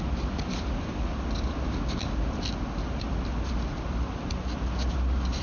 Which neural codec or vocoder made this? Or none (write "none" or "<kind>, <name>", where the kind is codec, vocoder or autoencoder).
none